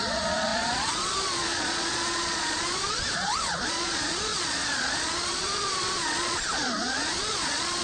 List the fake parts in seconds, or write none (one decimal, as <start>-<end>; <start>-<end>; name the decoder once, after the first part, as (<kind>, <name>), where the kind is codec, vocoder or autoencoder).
0.0-7.8 (vocoder, Vocos)